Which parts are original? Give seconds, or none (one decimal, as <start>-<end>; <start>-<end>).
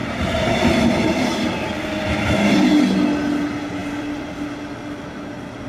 2.7-3.8; 4.3-5.7